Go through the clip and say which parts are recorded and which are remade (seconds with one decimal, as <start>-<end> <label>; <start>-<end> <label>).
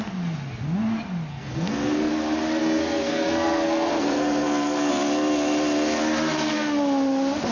0.0-1.3 recorded; 1.3-2.1 remade; 2.1-2.6 recorded; 2.6-4.9 remade; 4.9-7.5 recorded